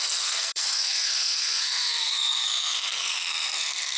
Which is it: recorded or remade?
remade